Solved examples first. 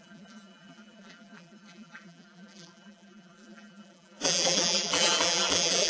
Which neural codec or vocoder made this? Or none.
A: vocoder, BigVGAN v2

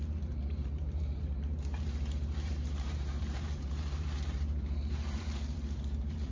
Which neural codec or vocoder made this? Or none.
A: vocoder, BigVGAN v2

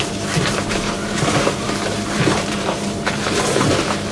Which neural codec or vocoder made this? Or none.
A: vocoder, BigVGAN v2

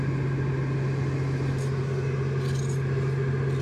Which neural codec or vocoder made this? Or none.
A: none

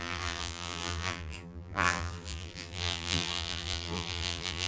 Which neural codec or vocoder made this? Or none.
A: vocoder, BigVGAN v2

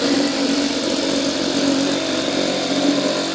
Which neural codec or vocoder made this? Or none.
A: vocoder, BigVGAN v2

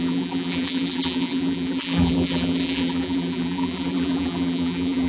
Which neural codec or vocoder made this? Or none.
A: vocoder, BigVGAN v2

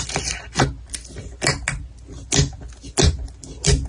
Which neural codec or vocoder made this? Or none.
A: none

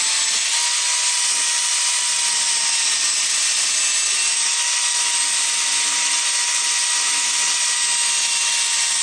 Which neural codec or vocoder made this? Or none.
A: none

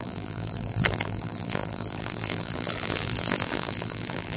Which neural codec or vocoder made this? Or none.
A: vocoder, BigVGAN v2